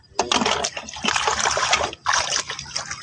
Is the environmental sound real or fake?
real